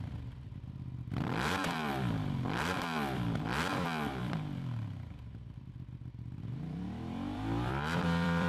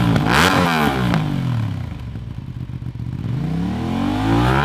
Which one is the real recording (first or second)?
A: second